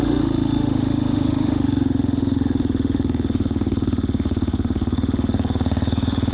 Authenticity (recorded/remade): remade